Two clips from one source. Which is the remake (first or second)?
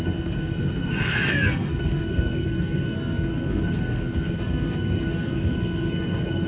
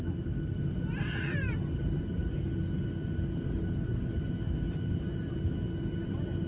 first